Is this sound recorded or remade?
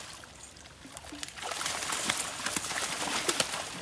recorded